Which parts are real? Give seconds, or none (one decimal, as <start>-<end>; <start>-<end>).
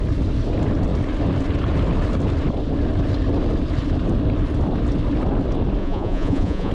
0.0-5.8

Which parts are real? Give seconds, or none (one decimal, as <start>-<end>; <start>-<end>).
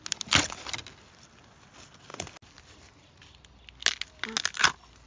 0.0-5.1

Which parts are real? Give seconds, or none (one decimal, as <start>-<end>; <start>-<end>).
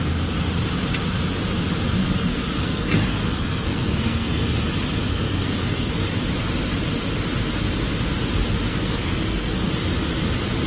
0.0-2.0; 4.4-5.1; 5.9-8.7; 9.7-10.7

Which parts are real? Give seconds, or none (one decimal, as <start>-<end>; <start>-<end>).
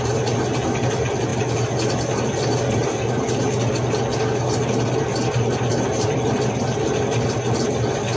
0.0-8.2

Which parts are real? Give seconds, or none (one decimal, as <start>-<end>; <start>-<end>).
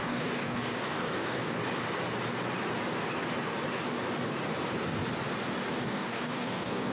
1.6-5.7